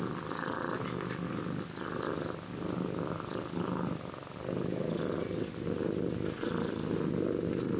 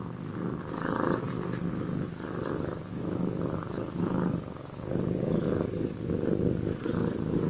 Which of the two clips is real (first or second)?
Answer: first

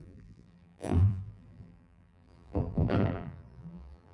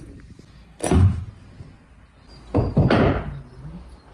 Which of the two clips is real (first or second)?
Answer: second